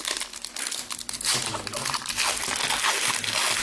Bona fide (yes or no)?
yes